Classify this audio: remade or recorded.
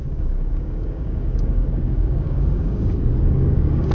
remade